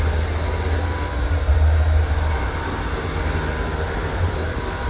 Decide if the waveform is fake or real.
real